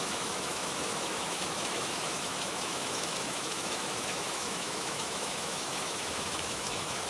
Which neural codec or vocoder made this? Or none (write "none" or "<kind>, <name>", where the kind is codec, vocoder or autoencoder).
autoencoder, DAC-VAE